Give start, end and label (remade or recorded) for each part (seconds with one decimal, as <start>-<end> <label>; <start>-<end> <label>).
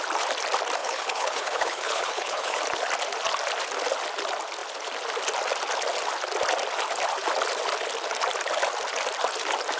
0.0-0.8 recorded; 0.8-2.6 remade; 2.6-9.8 recorded